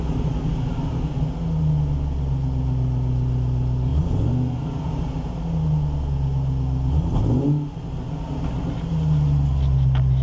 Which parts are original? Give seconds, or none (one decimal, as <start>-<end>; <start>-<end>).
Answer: 0.0-10.2